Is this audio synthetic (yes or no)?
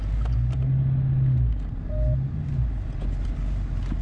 no